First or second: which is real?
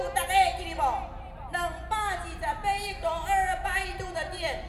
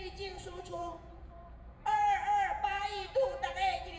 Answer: first